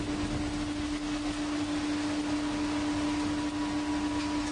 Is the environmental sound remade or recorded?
recorded